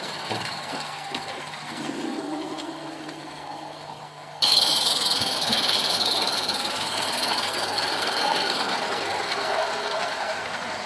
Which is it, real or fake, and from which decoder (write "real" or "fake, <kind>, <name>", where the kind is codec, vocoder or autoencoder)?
fake, codec, SNAC